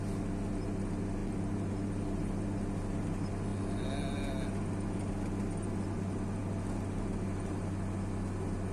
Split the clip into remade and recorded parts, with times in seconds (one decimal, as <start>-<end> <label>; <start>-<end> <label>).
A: 0.0-8.7 recorded